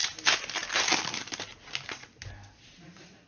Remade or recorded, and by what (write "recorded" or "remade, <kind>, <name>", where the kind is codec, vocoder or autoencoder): recorded